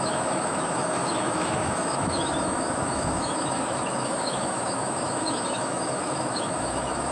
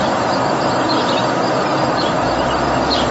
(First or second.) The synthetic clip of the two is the first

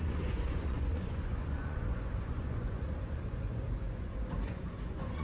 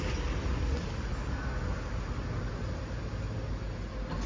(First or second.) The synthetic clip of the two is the first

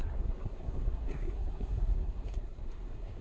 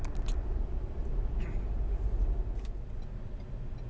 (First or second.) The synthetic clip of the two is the first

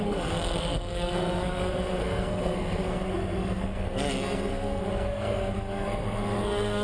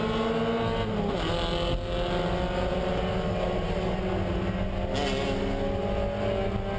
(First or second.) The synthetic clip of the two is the first